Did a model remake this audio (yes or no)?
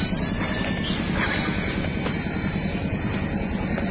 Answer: no